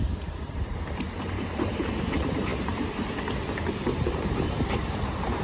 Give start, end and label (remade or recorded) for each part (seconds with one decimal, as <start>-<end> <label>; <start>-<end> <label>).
0.0-5.4 remade